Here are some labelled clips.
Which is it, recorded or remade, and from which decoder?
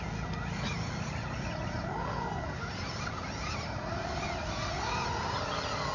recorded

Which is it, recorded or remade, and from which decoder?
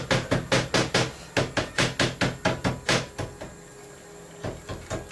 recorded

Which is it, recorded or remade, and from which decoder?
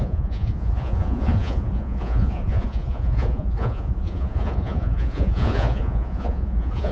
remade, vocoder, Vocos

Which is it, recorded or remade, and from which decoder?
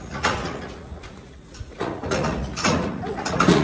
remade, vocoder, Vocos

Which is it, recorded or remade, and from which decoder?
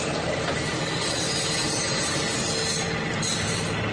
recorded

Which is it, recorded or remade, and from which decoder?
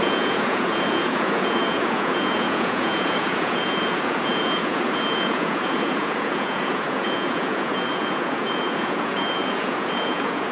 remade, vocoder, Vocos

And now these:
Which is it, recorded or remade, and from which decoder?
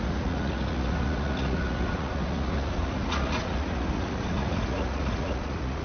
remade, vocoder, Vocos